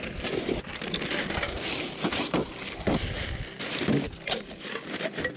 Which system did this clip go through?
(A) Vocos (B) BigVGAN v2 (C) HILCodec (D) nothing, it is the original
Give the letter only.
D